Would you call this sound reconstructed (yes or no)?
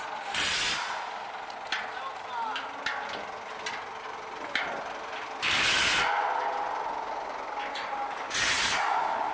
no